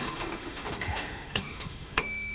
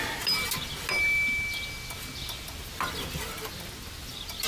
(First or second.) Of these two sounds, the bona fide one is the second